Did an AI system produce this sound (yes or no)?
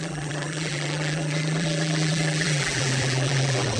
yes